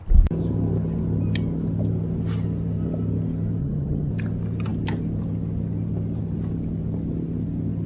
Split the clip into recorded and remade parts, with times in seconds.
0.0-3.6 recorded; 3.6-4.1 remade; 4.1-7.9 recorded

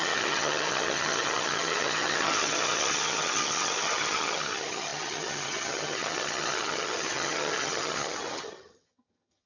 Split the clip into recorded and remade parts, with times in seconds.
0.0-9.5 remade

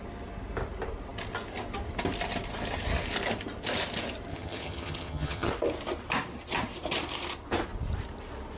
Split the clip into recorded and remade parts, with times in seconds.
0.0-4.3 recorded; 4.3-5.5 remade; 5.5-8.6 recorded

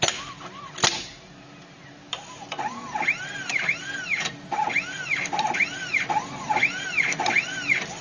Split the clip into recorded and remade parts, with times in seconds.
0.0-8.0 recorded

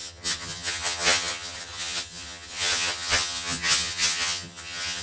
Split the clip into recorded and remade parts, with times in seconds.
0.0-5.0 remade